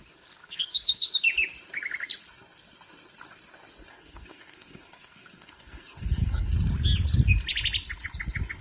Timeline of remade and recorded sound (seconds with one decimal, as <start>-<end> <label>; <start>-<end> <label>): 0.0-0.4 recorded; 0.4-1.1 remade; 1.1-3.9 recorded; 3.9-6.5 remade; 6.5-8.6 recorded